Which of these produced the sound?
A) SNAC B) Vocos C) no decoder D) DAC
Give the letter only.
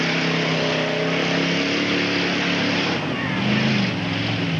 C